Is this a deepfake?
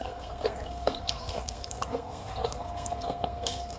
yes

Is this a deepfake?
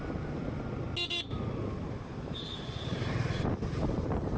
no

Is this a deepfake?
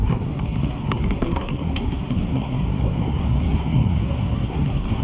yes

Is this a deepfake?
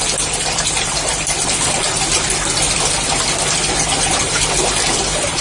no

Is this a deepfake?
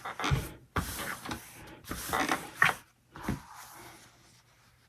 no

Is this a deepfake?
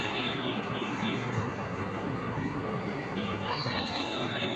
yes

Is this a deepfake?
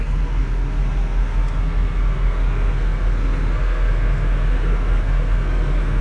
yes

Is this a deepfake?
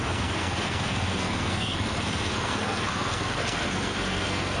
yes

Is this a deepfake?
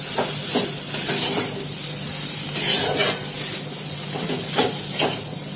no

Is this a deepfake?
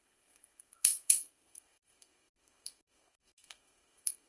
yes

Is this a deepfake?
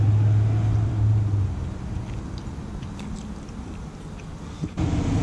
no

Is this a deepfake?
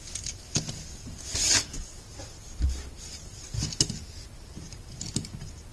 no